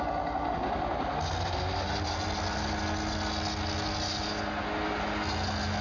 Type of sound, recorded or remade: recorded